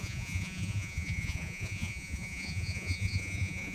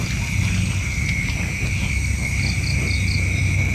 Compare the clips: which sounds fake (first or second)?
first